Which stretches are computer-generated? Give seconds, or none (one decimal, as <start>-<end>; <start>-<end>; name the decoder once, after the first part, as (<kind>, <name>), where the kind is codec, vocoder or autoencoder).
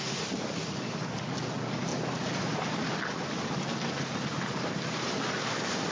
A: none